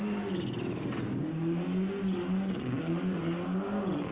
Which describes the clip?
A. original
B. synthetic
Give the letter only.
A